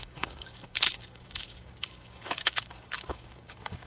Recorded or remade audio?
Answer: remade